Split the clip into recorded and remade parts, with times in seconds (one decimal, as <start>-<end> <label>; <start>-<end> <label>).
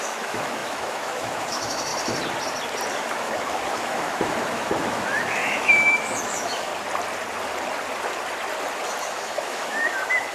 0.0-1.9 remade; 1.9-2.9 recorded; 2.9-6.7 remade; 6.7-9.0 recorded; 9.0-10.3 remade